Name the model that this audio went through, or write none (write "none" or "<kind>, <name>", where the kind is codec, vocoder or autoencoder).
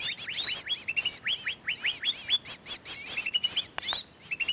none